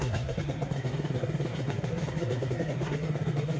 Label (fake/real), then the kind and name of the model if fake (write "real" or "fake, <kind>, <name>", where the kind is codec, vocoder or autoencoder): fake, codec, SNAC